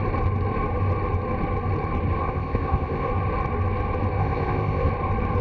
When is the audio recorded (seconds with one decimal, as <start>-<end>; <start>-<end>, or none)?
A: 0.0-2.2; 3.1-4.2; 4.9-5.4